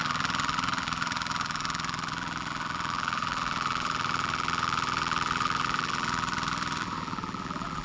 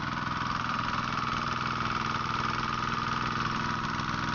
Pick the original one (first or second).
second